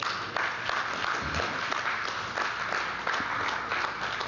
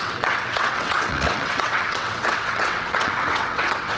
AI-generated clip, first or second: second